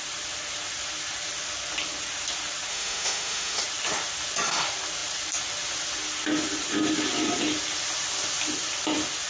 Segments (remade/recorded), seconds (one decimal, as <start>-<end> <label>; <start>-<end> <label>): 0.0-2.7 recorded; 2.7-3.6 remade; 3.6-9.3 recorded